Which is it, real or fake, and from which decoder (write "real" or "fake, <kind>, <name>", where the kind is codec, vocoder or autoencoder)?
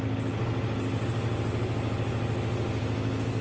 real